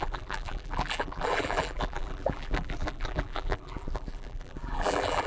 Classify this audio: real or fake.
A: fake